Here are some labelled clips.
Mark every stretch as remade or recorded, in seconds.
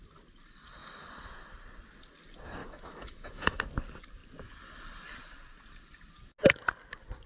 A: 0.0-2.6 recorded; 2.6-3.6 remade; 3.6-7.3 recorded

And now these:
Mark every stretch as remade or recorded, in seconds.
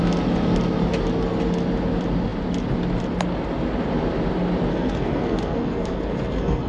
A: 0.0-4.7 recorded; 4.7-6.7 remade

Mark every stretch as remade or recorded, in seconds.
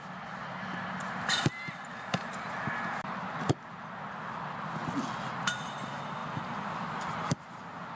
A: 0.0-8.0 recorded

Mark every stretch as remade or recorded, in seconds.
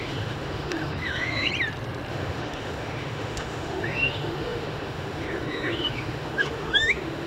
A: 0.0-1.5 remade; 1.5-2.1 recorded; 2.1-7.3 remade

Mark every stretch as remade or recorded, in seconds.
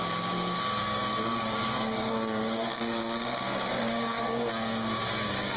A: 0.0-0.8 recorded; 0.8-4.2 remade; 4.2-5.6 recorded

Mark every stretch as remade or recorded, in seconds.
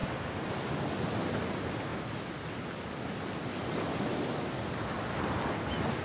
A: 0.0-0.7 remade; 0.7-6.0 recorded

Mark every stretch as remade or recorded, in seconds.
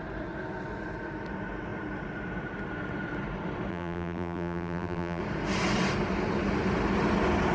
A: 0.0-3.7 recorded; 3.7-5.2 remade; 5.2-7.5 recorded